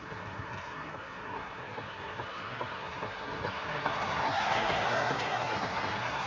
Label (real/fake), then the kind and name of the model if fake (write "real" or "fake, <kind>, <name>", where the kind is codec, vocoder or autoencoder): fake, codec, SNAC